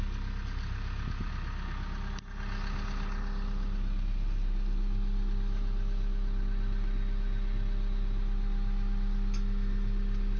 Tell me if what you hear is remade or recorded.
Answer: recorded